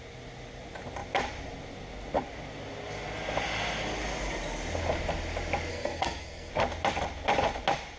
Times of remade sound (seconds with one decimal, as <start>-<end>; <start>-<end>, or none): 5.7-6.5